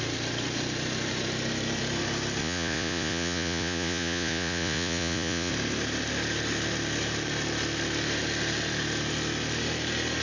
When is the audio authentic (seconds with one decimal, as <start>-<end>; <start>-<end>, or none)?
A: 0.0-2.4; 5.5-10.2